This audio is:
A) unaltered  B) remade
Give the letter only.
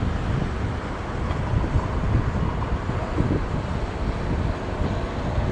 A